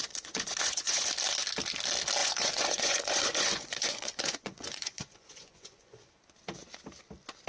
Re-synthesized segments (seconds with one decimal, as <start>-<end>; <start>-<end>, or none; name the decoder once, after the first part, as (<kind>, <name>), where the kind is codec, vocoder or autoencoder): 0.0-1.1 (vocoder, Vocos); 2.2-6.1